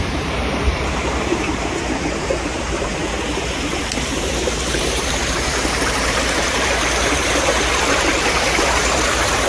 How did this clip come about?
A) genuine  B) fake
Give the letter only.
B